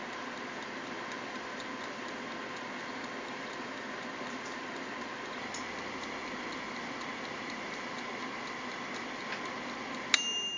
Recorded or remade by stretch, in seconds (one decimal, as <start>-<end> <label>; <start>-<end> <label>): 0.0-10.6 recorded